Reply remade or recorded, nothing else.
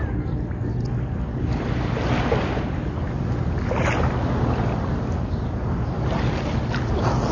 recorded